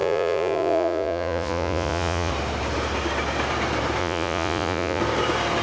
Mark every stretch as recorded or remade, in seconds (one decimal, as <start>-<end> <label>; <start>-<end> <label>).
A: 0.0-2.3 remade; 2.3-4.0 recorded; 4.0-5.0 remade; 5.0-5.6 recorded